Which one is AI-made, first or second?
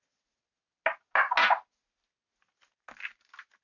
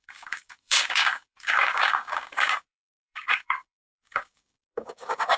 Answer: second